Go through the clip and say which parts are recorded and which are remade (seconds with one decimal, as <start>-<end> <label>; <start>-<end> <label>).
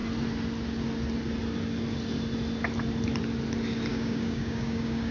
0.0-3.9 recorded; 3.9-5.1 remade